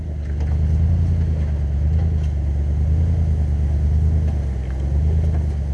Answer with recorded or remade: recorded